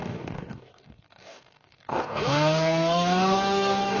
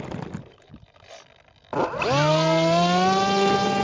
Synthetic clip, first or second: first